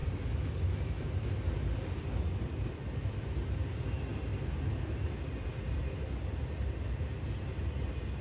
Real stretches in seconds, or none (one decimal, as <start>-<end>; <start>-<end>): 0.0-8.2